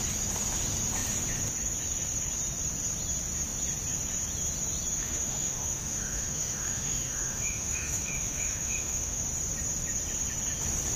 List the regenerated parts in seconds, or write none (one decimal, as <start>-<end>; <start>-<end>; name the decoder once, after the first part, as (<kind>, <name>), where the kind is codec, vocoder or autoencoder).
5.0-9.2 (autoencoder, DAC-VAE)